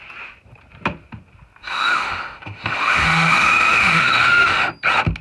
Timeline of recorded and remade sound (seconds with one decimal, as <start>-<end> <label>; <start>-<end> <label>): 0.0-1.6 recorded; 1.6-4.7 remade; 4.7-5.2 recorded